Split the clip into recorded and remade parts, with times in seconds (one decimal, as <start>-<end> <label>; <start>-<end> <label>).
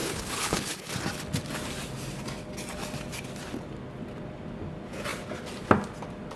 0.0-0.9 remade; 0.9-6.4 recorded